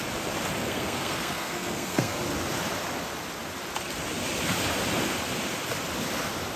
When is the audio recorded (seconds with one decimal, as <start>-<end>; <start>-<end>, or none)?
0.0-0.6; 2.2-6.6